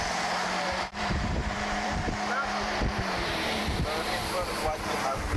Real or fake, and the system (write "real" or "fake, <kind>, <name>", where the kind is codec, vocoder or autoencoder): fake, vocoder, BigVGAN v2